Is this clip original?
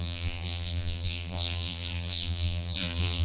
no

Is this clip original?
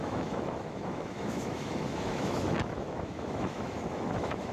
no